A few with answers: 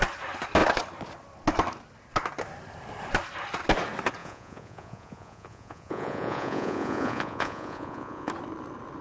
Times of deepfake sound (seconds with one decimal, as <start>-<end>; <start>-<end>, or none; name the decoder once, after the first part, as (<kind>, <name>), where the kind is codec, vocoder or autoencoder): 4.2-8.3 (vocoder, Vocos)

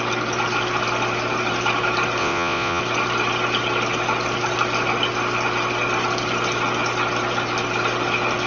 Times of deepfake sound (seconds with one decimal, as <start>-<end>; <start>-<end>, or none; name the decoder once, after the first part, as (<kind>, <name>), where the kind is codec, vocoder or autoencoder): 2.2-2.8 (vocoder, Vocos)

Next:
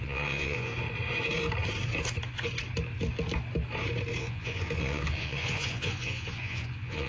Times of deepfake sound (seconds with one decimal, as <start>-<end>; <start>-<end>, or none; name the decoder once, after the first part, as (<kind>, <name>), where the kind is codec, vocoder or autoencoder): 0.0-0.7 (vocoder, Vocos); 4.2-7.1